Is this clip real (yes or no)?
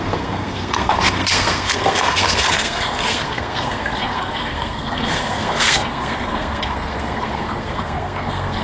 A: no